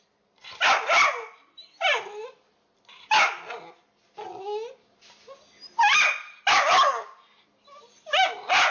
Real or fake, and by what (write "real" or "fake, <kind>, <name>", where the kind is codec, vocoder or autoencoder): real